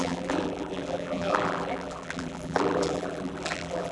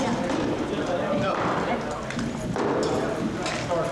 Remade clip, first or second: first